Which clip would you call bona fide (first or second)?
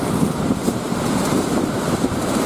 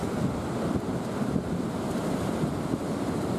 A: second